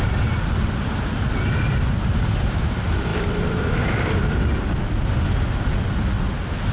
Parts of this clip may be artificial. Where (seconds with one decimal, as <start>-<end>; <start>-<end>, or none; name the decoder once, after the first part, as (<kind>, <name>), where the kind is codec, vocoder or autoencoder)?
none